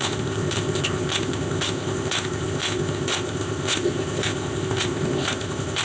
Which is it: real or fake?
fake